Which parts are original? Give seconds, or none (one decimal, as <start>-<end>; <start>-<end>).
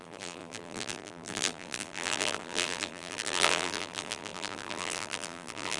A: none